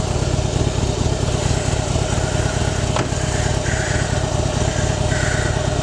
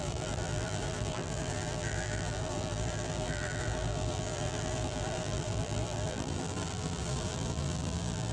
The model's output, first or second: second